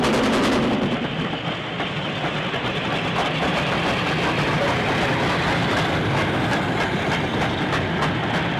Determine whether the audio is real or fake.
real